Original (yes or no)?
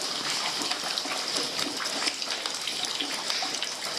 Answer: yes